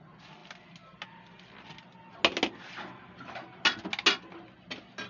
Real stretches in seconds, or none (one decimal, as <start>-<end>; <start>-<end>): 0.0-5.1